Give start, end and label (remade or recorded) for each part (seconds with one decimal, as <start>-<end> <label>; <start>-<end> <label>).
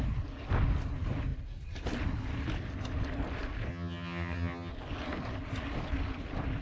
0.0-3.7 recorded; 3.7-4.7 remade; 4.7-6.6 recorded